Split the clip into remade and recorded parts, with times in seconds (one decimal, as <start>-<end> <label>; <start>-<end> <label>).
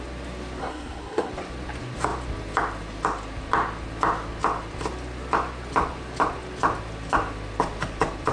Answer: 0.0-0.6 recorded; 0.6-1.3 remade; 1.3-8.3 recorded